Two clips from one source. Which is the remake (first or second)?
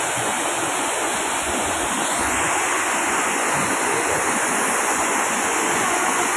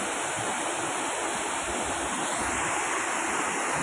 first